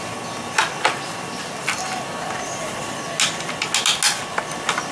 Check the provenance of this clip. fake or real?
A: real